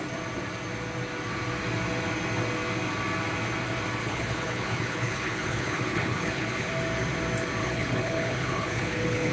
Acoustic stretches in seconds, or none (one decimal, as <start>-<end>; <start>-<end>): 0.0-4.0; 6.7-7.6